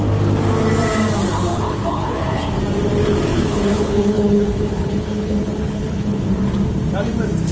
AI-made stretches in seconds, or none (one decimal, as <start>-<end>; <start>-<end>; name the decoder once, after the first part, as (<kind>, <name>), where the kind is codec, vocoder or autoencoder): 1.5-2.6 (codec, HILCodec); 3.3-6.3

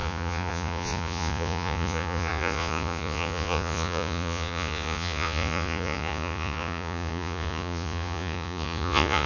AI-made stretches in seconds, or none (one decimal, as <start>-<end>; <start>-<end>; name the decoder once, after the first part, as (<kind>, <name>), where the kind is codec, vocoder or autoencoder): 0.0-9.3 (vocoder, Vocos)